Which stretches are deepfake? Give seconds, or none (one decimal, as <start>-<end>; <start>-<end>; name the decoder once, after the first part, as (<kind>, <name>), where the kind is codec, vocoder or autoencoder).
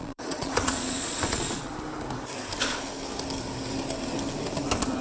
0.0-1.7 (vocoder, Vocos)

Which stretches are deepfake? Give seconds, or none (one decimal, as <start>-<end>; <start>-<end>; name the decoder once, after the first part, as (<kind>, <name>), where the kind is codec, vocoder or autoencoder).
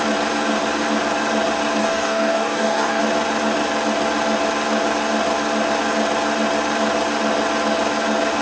1.8-3.0 (codec, DAC)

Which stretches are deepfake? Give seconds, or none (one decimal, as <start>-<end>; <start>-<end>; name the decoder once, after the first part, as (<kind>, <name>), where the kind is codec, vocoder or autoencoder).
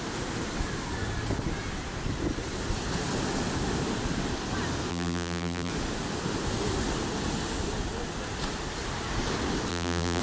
4.9-5.7 (vocoder, BigVGAN v2); 9.7-10.2